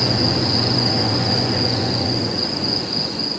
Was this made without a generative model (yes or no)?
no